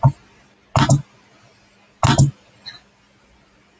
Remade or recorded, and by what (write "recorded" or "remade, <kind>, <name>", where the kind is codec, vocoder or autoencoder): recorded